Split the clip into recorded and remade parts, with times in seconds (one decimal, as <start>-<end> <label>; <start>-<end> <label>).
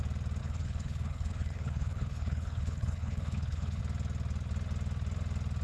0.0-0.4 recorded; 0.4-3.8 remade; 3.8-5.6 recorded